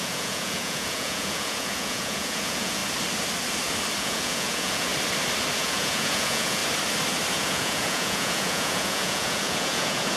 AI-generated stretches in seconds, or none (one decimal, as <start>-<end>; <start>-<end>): 0.0-2.8; 4.0-4.9; 5.6-6.6; 7.3-10.2